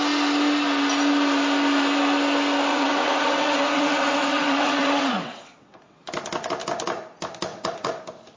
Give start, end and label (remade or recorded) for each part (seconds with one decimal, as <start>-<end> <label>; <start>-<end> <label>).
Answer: 0.0-2.7 recorded; 2.7-6.0 remade; 6.0-7.5 recorded; 7.5-8.0 remade; 8.0-8.4 recorded